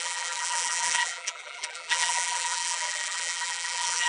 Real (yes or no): no